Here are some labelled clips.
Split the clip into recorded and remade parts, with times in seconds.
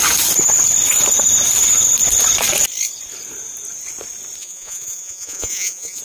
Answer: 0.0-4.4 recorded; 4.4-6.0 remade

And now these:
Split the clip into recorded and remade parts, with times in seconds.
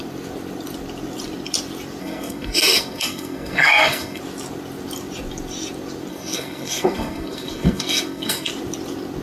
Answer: 0.0-2.0 recorded; 2.0-4.2 remade; 4.2-6.1 recorded; 6.1-8.5 remade; 8.5-9.2 recorded